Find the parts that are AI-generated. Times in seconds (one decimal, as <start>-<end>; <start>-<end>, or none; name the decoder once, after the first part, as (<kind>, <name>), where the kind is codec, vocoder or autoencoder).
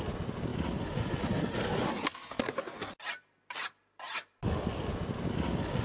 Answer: none